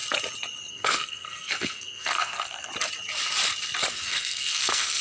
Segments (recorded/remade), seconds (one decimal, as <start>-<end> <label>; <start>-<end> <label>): 0.0-0.7 recorded; 0.7-2.7 remade; 2.7-3.9 recorded; 3.9-5.0 remade